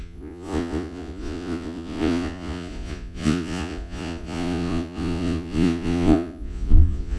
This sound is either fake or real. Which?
fake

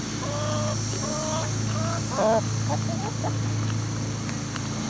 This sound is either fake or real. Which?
real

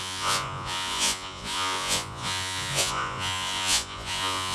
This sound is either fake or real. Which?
fake